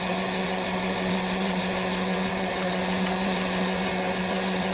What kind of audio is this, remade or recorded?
remade